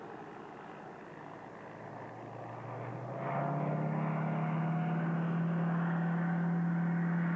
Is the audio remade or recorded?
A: recorded